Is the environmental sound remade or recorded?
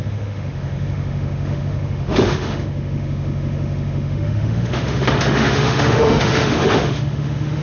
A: remade